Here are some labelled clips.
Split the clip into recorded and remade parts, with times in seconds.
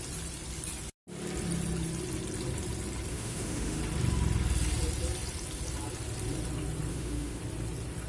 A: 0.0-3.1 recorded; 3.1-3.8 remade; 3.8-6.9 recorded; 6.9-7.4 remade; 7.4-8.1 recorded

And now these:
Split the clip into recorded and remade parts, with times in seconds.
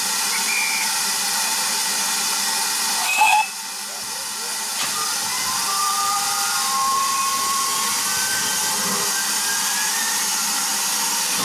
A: 0.0-1.8 remade; 1.8-4.6 recorded; 4.6-8.5 remade; 8.5-9.6 recorded; 9.6-11.4 remade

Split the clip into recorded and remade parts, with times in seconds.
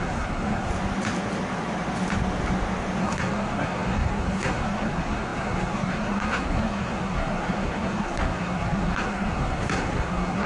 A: 0.0-0.7 remade; 0.7-3.0 recorded; 3.0-10.5 remade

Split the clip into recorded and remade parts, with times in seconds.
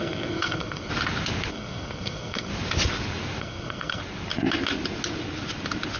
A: 0.0-0.9 remade; 0.9-1.5 recorded; 1.5-2.5 remade; 2.5-3.4 recorded; 3.4-4.0 remade; 4.0-6.0 recorded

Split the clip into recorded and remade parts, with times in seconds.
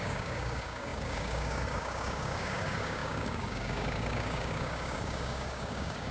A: 0.0-6.1 remade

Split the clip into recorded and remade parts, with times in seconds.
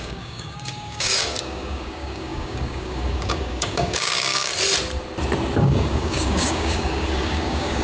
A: 0.0-4.5 remade; 4.5-5.6 recorded; 5.6-7.8 remade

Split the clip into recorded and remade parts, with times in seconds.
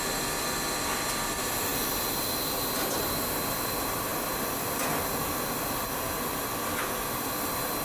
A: 0.0-7.8 recorded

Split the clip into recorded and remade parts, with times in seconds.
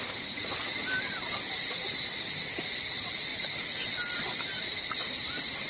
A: 0.0-5.7 recorded